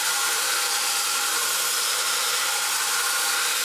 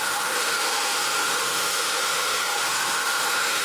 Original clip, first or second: first